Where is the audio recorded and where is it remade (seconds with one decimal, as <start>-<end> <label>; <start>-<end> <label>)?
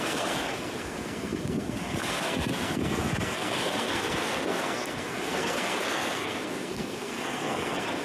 0.0-8.0 remade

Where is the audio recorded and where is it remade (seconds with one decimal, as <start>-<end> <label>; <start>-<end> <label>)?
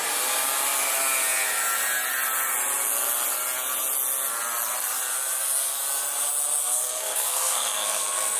0.0-6.6 recorded; 6.6-8.4 remade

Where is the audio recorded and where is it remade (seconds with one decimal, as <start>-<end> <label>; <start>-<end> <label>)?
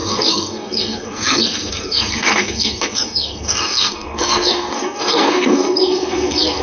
0.0-6.6 remade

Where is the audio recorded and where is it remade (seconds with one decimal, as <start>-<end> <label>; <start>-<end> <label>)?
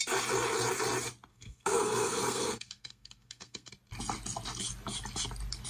0.0-1.3 recorded; 1.3-3.7 remade; 3.7-5.7 recorded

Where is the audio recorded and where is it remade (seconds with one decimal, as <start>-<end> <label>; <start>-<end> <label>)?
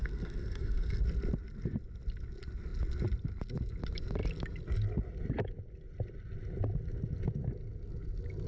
0.0-1.0 remade; 1.0-8.5 recorded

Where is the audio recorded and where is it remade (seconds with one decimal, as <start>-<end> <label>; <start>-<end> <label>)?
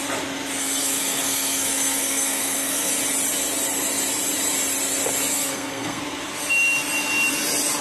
0.0-0.6 recorded; 0.6-2.9 remade; 2.9-5.3 recorded; 5.3-6.0 remade; 6.0-7.8 recorded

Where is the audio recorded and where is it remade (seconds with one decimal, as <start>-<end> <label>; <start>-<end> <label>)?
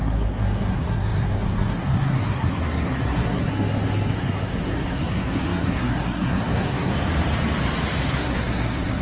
0.0-6.9 remade; 6.9-8.1 recorded; 8.1-9.0 remade